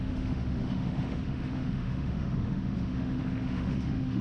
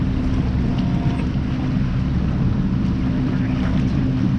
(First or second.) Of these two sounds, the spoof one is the first